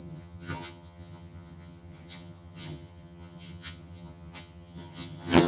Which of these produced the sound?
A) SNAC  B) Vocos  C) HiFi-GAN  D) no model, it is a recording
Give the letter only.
C